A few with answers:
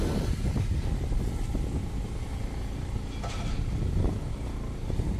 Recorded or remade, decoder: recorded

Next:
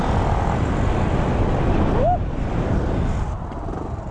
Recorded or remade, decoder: remade, vocoder, BigVGAN v2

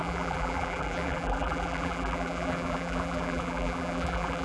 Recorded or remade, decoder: remade, vocoder, BigVGAN v2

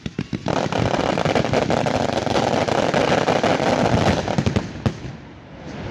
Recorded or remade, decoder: remade, vocoder, BigVGAN v2